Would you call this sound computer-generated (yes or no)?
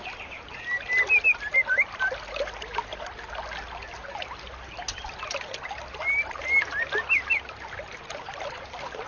no